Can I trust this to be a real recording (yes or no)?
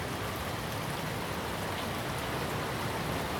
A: yes